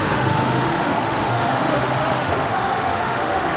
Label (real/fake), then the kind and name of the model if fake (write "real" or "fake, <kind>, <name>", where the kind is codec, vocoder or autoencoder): fake, autoencoder, DAC-VAE